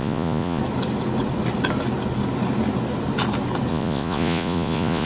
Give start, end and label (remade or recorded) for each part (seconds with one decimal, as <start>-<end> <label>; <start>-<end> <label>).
0.0-0.6 remade; 0.6-3.7 recorded; 3.7-5.1 remade